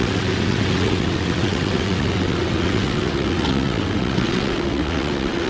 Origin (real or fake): fake